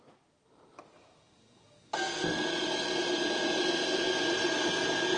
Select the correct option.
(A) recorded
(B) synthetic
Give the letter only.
A